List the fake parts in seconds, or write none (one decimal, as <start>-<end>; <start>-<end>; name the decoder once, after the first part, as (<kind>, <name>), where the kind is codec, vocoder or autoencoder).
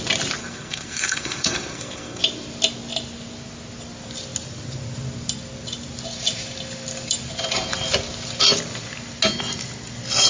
0.4-2.2 (codec, SNAC)